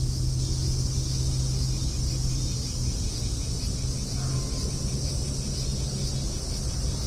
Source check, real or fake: real